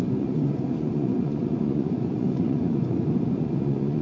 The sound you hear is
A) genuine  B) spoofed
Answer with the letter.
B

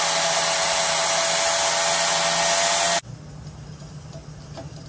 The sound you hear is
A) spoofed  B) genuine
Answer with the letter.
B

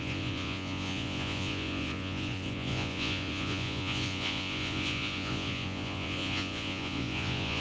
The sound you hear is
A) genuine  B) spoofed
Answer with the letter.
B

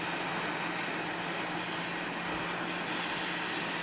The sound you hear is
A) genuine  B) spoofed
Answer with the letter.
A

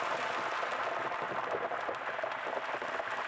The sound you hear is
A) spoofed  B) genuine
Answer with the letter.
B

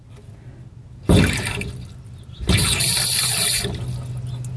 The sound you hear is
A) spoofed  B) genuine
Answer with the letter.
B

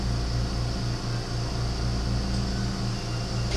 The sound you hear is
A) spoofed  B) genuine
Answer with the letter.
B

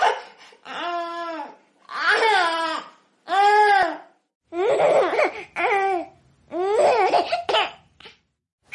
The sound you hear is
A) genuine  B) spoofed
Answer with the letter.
A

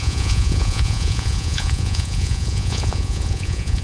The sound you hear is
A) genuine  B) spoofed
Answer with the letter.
B